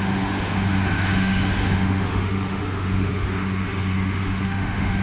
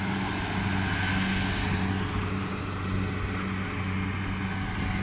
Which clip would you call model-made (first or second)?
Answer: first